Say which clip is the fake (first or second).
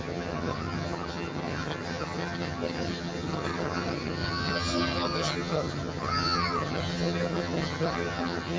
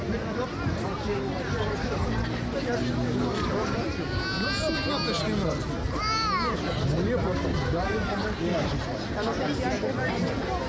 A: first